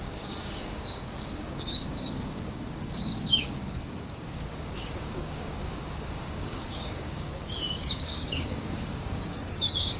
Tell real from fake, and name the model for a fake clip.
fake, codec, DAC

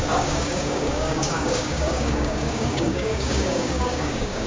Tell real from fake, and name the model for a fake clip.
fake, codec, DAC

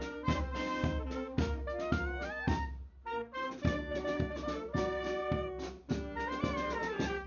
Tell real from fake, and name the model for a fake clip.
real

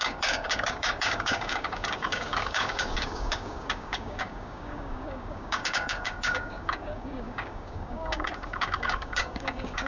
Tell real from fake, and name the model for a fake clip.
fake, codec, DAC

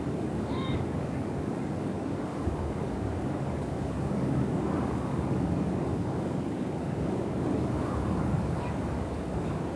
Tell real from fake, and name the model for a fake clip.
fake, codec, DAC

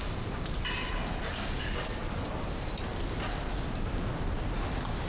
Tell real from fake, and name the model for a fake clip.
real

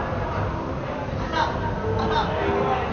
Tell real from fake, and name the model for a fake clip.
real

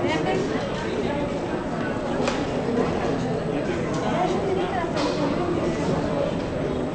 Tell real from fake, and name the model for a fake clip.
real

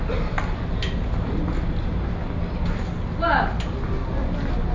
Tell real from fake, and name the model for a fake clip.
real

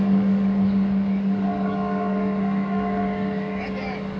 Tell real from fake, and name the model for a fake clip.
fake, codec, DAC